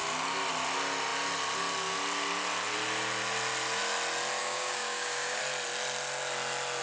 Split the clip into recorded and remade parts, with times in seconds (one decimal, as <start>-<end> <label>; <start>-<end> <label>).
0.0-4.4 recorded; 4.4-5.4 remade; 5.4-6.8 recorded